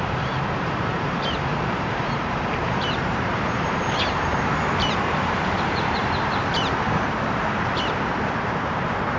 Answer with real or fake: fake